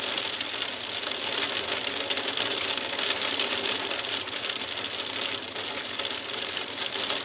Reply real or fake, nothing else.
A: real